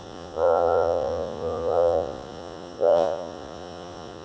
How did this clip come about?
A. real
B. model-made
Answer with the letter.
B